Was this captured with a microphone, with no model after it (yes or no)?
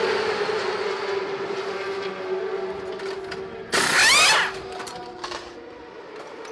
yes